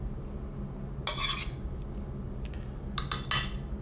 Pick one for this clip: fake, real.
real